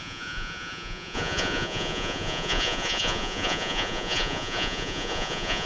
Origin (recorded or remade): remade